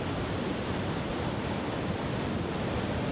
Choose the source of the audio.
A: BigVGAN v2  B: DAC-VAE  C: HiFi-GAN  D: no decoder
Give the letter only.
D